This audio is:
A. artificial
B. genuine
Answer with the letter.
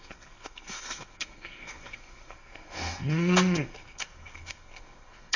A